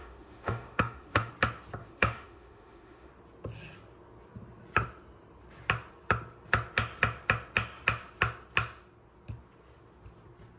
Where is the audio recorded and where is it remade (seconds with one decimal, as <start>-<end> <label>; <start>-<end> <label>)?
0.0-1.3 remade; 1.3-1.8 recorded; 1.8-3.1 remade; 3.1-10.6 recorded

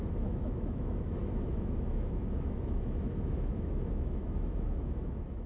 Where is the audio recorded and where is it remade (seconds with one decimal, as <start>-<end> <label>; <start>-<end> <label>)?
0.0-5.5 remade

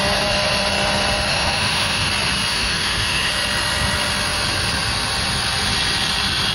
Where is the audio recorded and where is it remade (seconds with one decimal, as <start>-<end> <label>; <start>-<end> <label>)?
0.0-1.3 recorded; 1.3-2.1 remade; 2.1-2.5 recorded; 2.5-3.3 remade; 3.3-6.5 recorded